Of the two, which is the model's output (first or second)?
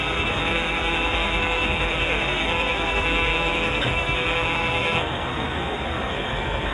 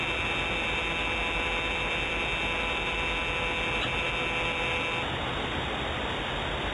first